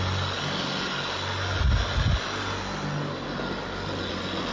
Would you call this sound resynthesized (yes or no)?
no